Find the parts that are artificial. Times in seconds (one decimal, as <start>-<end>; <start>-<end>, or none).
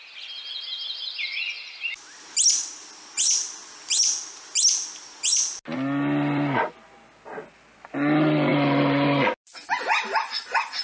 none